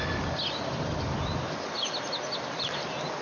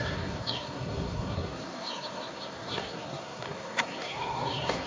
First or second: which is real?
first